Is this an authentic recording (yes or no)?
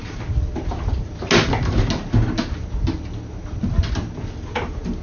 yes